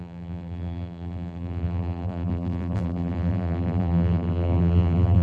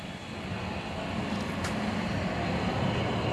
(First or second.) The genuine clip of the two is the second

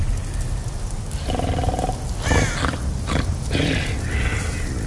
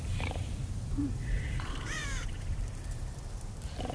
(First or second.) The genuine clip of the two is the first